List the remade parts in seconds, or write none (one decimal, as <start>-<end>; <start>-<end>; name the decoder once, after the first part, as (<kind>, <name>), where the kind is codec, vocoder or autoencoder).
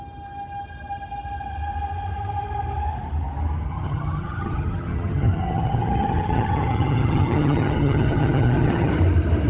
3.7-8.9 (vocoder, HiFi-GAN)